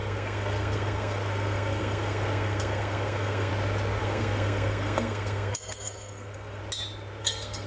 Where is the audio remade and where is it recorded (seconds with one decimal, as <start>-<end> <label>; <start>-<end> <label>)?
0.0-3.5 remade; 3.5-4.0 recorded; 4.0-6.6 remade; 6.6-7.2 recorded; 7.2-7.7 remade